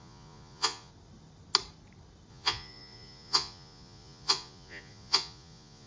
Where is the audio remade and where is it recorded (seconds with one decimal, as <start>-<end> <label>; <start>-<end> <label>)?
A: 0.0-0.9 remade; 0.9-2.3 recorded; 2.3-5.9 remade